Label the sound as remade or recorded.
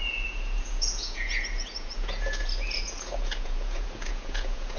remade